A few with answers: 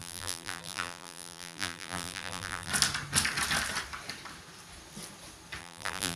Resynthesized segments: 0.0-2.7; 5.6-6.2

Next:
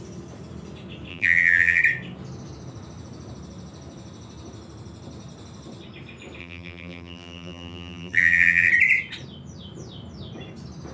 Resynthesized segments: 1.1-1.8; 6.4-8.7

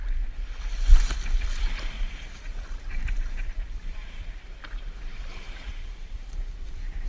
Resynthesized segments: 0.9-4.3; 5.3-7.1

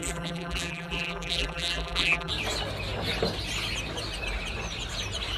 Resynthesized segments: 0.0-2.3

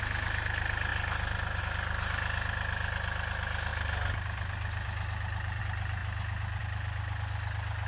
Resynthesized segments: 3.7-5.6

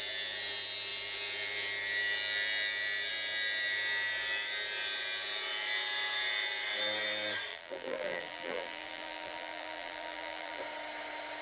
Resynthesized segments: 7.5-10.6

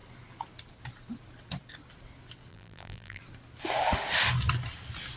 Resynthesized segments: 2.5-3.2